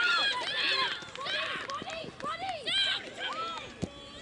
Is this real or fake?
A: real